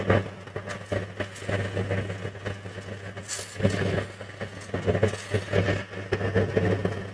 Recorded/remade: recorded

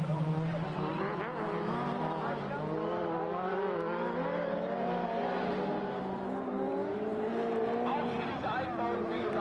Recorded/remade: recorded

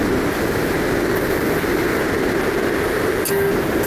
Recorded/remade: recorded